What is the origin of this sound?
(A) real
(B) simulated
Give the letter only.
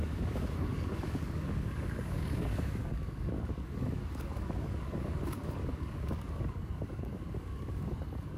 B